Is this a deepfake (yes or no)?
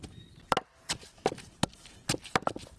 no